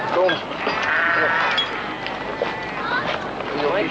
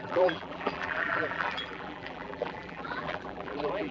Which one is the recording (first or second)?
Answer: first